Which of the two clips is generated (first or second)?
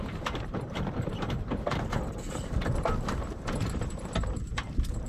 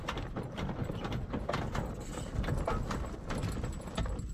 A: first